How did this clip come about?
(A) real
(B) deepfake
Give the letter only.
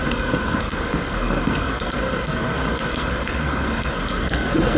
B